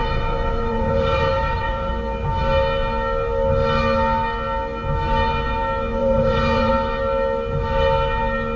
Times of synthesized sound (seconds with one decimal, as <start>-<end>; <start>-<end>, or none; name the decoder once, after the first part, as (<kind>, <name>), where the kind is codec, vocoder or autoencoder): 0.0-1.9 (vocoder, Vocos); 6.0-6.7